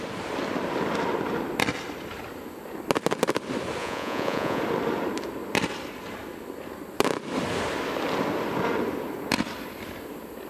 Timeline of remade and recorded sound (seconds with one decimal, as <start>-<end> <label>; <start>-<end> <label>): 0.0-3.8 recorded; 3.8-4.6 remade; 4.6-10.5 recorded